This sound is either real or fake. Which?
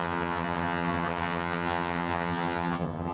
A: fake